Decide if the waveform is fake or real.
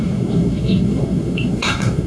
fake